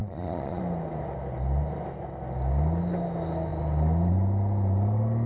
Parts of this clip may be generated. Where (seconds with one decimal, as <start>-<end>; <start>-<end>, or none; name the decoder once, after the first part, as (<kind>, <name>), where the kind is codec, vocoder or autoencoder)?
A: 0.0-0.6 (vocoder, Vocos)